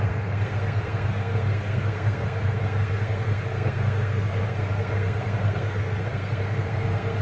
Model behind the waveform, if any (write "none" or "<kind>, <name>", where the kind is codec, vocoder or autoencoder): codec, SNAC